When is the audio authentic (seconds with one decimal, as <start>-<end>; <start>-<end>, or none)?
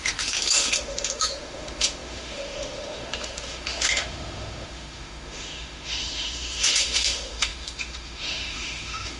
none